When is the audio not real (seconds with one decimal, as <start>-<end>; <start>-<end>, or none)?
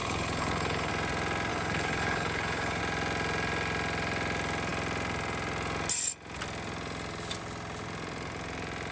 0.0-0.9; 1.5-2.8